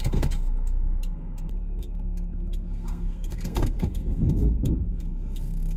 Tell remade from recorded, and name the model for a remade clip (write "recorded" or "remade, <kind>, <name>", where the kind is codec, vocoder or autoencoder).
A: remade, codec, SNAC